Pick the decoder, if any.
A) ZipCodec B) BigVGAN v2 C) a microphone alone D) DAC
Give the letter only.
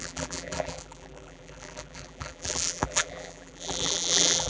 B